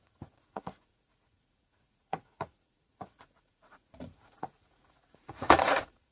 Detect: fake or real fake